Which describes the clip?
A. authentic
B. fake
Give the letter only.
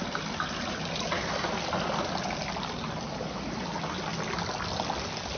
A